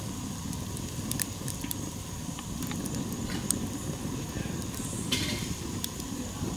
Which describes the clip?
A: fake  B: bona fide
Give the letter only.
B